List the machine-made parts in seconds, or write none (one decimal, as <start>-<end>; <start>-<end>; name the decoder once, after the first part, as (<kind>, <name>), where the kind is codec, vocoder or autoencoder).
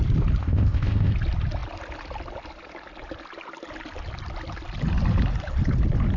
0.4-1.1 (codec, ZipCodec)